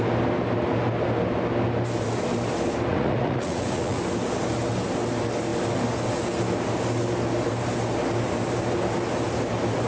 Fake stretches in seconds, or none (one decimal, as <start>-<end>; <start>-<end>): 2.9-4.0